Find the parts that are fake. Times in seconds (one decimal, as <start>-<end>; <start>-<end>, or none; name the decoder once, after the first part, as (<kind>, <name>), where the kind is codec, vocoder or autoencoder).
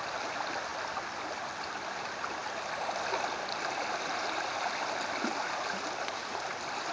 none